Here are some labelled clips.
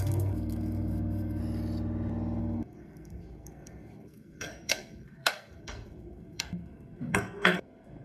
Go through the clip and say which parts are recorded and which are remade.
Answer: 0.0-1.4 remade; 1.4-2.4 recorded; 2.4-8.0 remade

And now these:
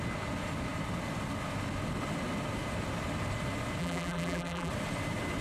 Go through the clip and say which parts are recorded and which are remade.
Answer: 0.0-3.8 recorded; 3.8-4.7 remade; 4.7-5.4 recorded

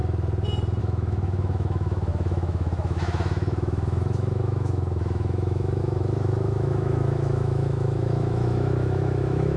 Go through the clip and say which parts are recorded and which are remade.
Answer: 0.0-0.8 recorded; 0.8-9.6 remade